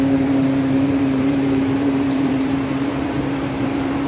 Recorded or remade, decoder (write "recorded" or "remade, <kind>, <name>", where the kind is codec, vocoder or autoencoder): remade, vocoder, BigVGAN v2